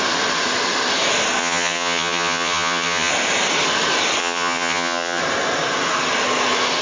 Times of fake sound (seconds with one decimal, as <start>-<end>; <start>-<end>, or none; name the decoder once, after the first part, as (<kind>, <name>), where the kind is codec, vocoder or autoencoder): 1.4-3.1 (vocoder, HiFi-GAN); 4.2-5.2